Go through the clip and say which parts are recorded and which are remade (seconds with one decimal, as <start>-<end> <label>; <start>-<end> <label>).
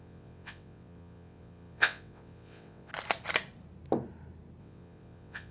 0.0-2.9 remade; 2.9-4.6 recorded; 4.6-5.5 remade